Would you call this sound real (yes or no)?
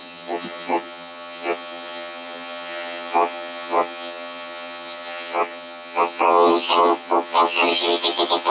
no